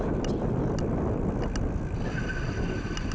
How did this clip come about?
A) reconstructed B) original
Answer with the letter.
B